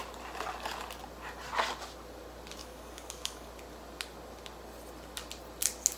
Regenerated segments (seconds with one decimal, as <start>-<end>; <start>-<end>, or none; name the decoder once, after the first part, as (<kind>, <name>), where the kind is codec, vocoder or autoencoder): 2.6-3.5 (codec, DAC)